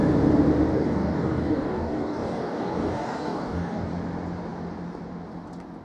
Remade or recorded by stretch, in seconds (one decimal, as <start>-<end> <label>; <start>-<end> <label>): 0.0-0.7 recorded; 0.7-3.9 remade; 3.9-5.8 recorded